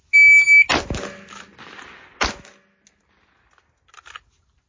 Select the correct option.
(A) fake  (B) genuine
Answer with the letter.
B